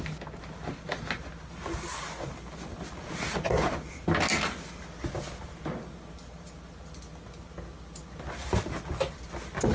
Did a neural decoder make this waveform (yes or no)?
no